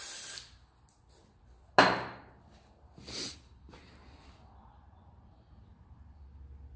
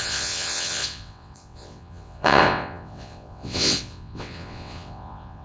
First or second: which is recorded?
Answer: first